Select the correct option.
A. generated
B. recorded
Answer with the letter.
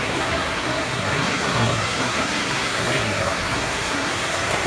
A